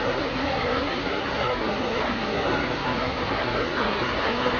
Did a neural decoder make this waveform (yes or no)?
yes